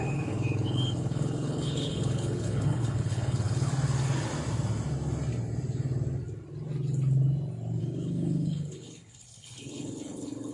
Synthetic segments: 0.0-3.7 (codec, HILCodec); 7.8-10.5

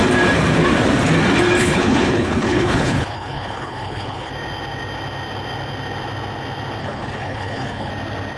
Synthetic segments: 1.6-4.3 (codec, HILCodec); 6.8-7.9

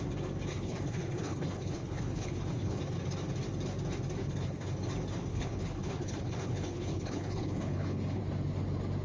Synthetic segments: 0.5-2.8 (codec, HILCodec); 4.2-4.7; 5.3-8.2

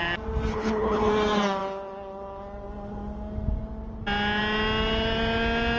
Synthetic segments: 0.5-1.1 (codec, HILCodec)

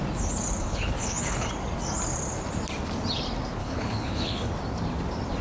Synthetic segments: 0.6-1.5 (codec, HILCodec); 3.6-4.5

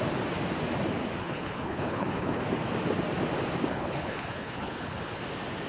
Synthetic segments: 1.2-2.4 (codec, HILCodec); 3.7-5.2